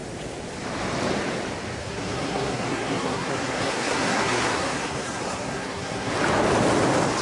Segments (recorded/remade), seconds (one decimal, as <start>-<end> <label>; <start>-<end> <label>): 0.0-1.8 recorded; 1.8-6.1 remade; 6.1-7.2 recorded

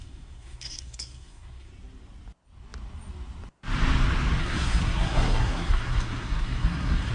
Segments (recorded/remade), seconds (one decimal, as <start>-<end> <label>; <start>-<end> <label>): 0.0-1.7 remade; 1.7-4.4 recorded; 4.4-7.1 remade

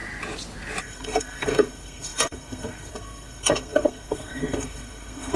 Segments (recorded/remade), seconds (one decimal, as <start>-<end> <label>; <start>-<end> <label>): 0.0-0.8 recorded; 0.8-5.4 remade

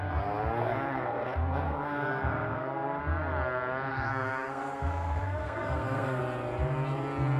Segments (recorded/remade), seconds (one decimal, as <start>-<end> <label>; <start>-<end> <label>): 0.0-0.6 recorded; 0.6-3.0 remade; 3.0-3.9 recorded; 3.9-6.2 remade; 6.2-7.4 recorded

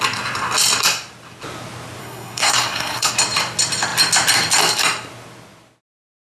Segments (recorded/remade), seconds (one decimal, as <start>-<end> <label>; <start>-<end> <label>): 0.0-2.0 recorded; 2.0-3.1 remade; 3.1-6.4 recorded